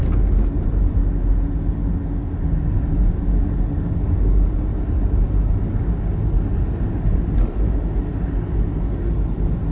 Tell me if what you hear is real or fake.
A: real